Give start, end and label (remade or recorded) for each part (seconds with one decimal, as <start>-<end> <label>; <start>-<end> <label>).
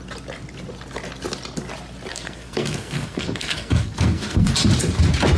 0.0-2.1 recorded; 2.1-4.5 remade; 4.5-5.4 recorded